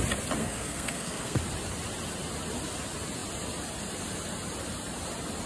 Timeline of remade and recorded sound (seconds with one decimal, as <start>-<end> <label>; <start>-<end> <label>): 0.0-0.4 recorded; 0.4-1.4 remade; 1.4-5.5 recorded